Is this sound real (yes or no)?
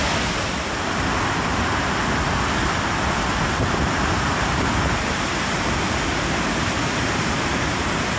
yes